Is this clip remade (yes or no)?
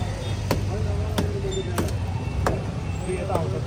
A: no